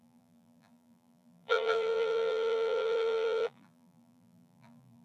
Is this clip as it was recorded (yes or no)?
no